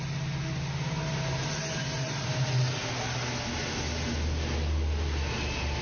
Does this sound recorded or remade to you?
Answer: recorded